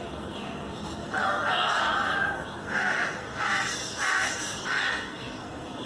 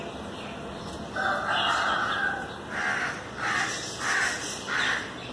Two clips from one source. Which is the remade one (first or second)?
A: first